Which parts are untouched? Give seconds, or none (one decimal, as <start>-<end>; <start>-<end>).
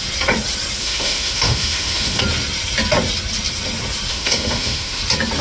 0.0-0.8; 2.2-4.1; 5.0-5.4